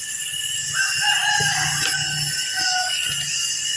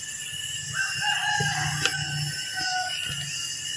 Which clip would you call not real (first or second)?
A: first